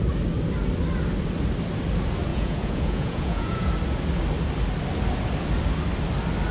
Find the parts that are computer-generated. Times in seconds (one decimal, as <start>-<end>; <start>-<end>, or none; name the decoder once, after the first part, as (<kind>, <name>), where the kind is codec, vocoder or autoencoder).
2.3-3.7 (vocoder, Vocos)